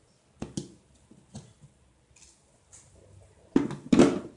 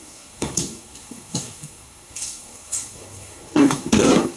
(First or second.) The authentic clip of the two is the first